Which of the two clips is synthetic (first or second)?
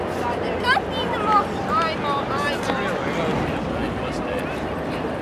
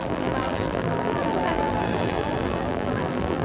second